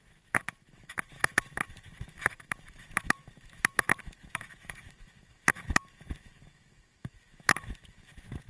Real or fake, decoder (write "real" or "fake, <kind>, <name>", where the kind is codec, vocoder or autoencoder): fake, autoencoder, DAC-VAE